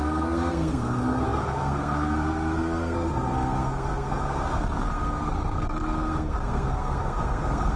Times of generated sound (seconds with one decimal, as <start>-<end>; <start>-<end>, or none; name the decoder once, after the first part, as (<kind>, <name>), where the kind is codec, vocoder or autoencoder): 0.0-7.8 (codec, SNAC)

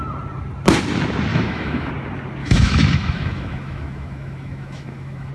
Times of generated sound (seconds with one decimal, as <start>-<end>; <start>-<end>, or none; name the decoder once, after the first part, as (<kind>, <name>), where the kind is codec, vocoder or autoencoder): 1.3-1.9 (autoencoder, DAC-VAE); 2.4-5.3

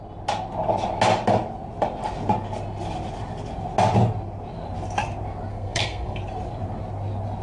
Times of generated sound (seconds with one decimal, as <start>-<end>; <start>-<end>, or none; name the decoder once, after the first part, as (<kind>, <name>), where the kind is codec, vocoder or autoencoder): 5.5-6.2 (codec, SNAC)